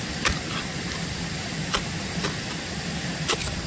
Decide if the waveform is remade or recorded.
recorded